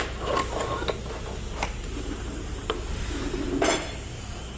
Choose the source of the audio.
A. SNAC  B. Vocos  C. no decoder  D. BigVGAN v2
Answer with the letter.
C